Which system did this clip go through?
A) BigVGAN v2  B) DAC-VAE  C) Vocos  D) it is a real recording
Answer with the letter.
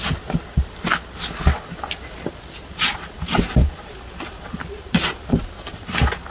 D